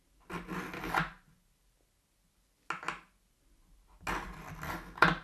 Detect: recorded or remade recorded